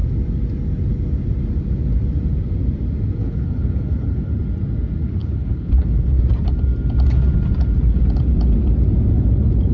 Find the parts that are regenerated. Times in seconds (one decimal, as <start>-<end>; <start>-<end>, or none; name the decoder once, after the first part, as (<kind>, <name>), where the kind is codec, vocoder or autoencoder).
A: 3.2-4.3 (codec, HILCodec); 5.0-6.2